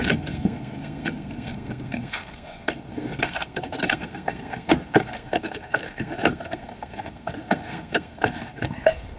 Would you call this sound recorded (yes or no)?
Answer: no